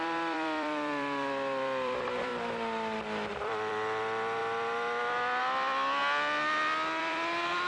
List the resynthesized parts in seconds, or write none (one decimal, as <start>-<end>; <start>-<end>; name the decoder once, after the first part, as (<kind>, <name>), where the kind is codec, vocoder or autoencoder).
0.0-2.3 (vocoder, BigVGAN v2); 3.3-4.4; 5.4-6.0; 7.0-7.7